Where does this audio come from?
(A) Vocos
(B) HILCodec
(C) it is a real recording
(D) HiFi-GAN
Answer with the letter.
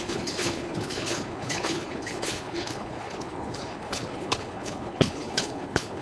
B